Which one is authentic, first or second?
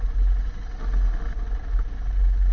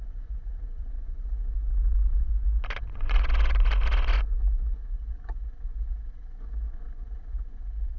first